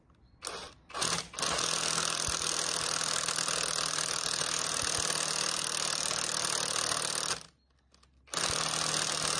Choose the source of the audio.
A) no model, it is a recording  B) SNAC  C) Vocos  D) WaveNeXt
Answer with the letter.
A